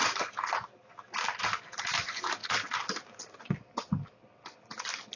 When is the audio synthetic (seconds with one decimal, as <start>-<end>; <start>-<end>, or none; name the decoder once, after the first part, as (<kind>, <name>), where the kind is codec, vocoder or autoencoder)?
none